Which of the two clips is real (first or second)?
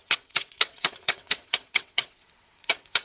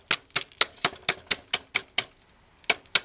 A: second